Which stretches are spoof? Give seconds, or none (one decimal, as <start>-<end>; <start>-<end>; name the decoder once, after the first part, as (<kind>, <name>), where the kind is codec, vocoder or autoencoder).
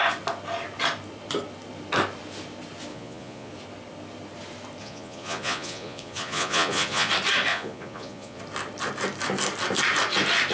2.9-3.5 (vocoder, Vocos); 4.8-7.1; 7.5-8.4